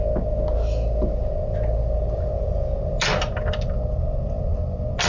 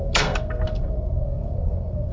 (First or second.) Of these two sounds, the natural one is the first